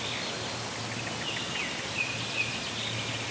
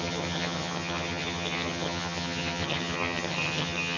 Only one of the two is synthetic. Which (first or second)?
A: second